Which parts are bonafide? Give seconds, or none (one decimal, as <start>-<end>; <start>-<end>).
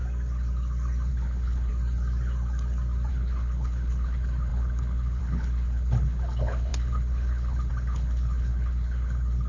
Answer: 0.0-1.1; 1.7-3.1